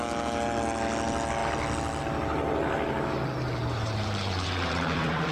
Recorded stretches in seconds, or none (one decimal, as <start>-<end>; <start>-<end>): 0.0-3.6